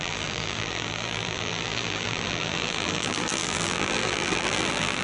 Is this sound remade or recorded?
remade